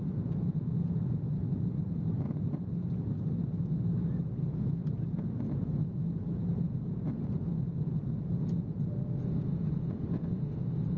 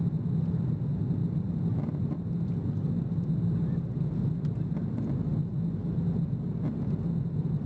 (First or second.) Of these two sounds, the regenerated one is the first